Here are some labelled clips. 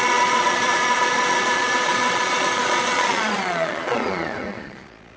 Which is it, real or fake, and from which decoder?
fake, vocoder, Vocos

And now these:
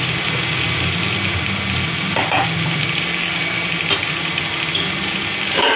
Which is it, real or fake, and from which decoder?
real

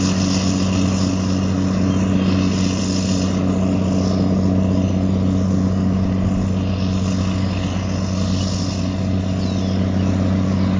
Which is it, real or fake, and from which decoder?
real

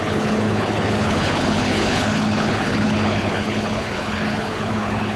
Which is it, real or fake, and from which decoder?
fake, codec, HILCodec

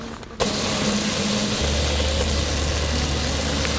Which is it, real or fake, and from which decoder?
real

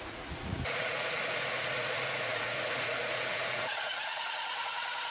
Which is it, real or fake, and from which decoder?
fake, vocoder, Vocos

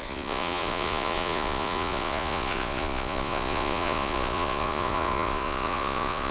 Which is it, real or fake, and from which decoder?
fake, vocoder, Vocos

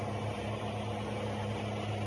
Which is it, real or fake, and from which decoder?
real